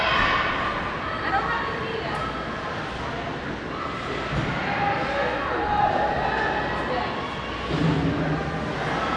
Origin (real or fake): real